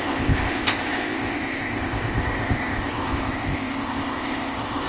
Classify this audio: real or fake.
fake